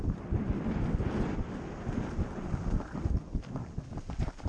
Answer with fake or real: real